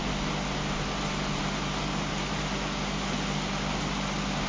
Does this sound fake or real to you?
real